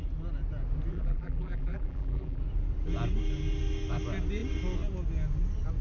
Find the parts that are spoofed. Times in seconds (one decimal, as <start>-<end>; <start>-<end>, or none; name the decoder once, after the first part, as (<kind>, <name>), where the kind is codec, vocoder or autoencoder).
0.9-2.4 (vocoder, BigVGAN v2)